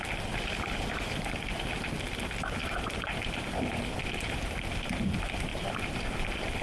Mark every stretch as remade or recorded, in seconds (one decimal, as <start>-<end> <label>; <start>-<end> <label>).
0.0-2.6 recorded; 2.6-4.4 remade; 4.4-5.5 recorded; 5.5-6.6 remade